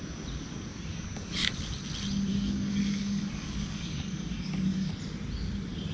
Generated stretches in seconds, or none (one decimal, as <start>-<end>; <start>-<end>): 0.7-1.5; 2.3-4.9